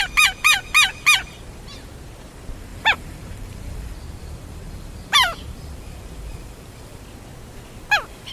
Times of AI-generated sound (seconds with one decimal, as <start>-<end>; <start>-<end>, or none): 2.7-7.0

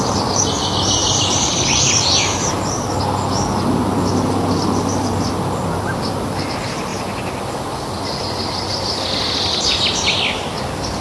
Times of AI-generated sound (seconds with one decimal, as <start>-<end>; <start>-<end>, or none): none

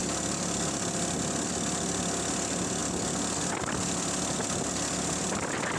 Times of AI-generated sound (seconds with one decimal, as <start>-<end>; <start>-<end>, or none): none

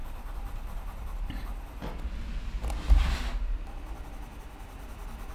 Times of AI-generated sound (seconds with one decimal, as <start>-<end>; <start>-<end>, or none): 0.0-1.3

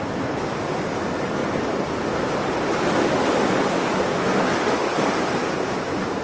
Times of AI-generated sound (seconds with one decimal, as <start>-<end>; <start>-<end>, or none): none

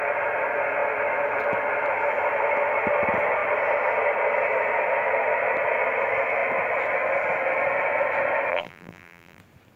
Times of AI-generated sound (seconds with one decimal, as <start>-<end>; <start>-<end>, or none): 8.5-9.4

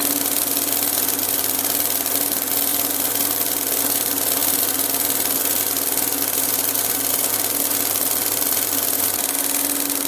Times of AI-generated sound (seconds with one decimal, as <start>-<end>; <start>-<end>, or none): 2.7-3.8

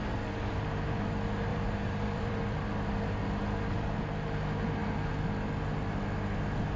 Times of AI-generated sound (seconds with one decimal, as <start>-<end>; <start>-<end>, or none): 1.5-2.4